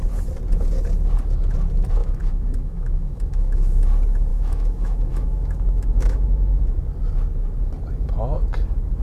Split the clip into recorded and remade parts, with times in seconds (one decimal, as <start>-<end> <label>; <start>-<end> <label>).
0.0-2.0 recorded; 2.0-3.8 remade; 3.8-4.3 recorded; 4.3-6.6 remade; 6.6-9.0 recorded